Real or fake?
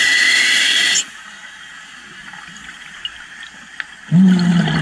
real